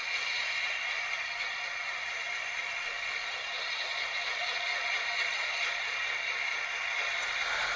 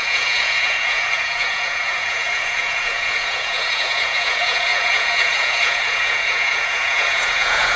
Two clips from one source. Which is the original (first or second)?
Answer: first